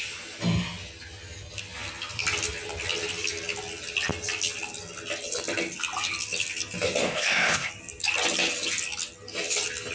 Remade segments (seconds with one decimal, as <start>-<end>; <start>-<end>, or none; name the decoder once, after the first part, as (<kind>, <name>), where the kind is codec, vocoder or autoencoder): 7.0-7.7 (codec, ZipCodec)